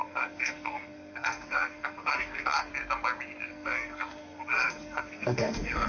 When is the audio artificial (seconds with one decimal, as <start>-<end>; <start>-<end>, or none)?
0.0-2.7; 3.5-5.9